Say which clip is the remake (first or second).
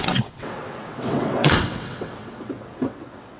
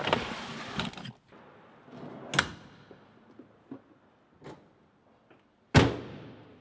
first